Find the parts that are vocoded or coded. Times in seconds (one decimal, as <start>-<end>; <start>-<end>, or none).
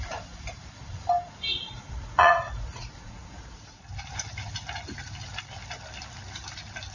1.6-3.8